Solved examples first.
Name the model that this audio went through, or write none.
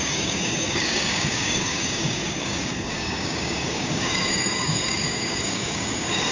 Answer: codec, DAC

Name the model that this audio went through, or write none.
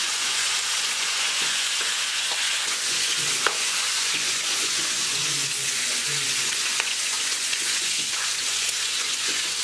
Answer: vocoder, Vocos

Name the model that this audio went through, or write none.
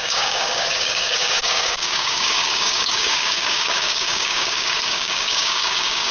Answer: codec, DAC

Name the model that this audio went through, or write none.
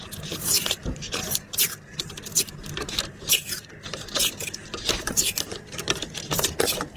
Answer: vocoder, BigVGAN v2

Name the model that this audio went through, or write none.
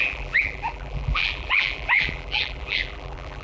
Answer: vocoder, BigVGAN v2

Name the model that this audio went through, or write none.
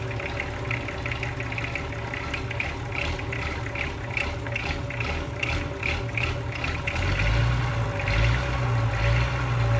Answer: none